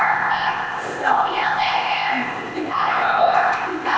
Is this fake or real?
fake